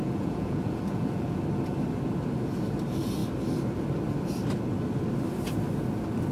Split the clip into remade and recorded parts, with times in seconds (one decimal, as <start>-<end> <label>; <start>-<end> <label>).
0.0-1.4 remade; 1.4-6.3 recorded